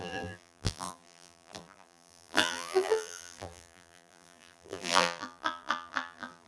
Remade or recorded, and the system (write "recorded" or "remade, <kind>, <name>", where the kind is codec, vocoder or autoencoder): remade, vocoder, BigVGAN v2